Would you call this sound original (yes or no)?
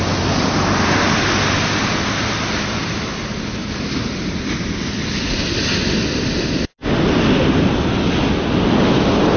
yes